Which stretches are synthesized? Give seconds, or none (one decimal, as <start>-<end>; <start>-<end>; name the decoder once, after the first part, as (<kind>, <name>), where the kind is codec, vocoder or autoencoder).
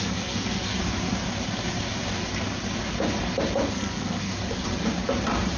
0.0-0.7 (codec, SNAC); 3.7-4.3